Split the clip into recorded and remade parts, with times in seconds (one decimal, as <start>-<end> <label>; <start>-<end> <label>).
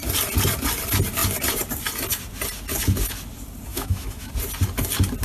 0.0-3.7 recorded; 3.7-4.3 remade; 4.3-5.2 recorded